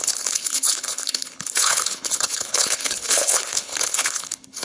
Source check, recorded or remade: remade